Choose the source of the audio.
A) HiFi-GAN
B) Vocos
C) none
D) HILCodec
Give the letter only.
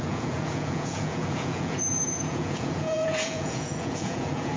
B